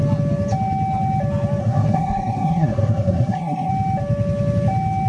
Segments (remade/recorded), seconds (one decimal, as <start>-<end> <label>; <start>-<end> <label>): 0.0-1.6 recorded; 1.6-3.7 remade; 3.7-5.1 recorded